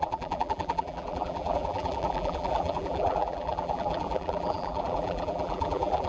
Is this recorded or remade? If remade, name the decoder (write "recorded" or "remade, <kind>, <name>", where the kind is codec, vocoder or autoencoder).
remade, vocoder, BigVGAN v2